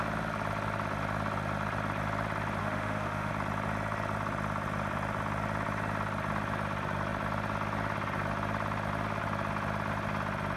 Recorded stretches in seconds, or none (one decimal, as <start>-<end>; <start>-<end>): 0.0-2.6; 3.3-10.6